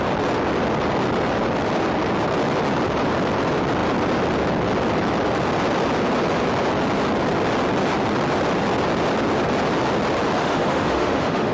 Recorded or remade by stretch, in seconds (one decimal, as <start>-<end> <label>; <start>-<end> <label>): 0.0-10.4 recorded; 10.4-11.5 remade